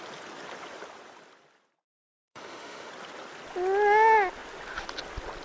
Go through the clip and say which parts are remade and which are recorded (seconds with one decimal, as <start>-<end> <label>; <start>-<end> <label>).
0.0-2.3 recorded; 2.3-2.9 remade; 2.9-5.4 recorded